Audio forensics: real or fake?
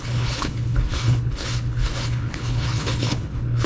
fake